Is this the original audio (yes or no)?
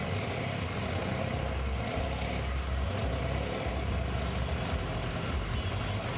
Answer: yes